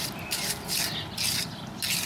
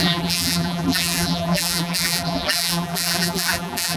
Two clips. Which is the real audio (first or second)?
first